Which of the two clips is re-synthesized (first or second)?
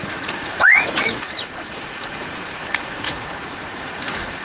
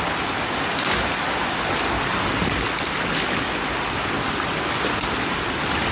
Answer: first